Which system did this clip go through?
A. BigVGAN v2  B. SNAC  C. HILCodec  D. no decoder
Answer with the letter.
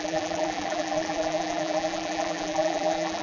A